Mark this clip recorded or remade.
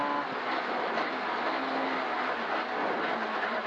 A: recorded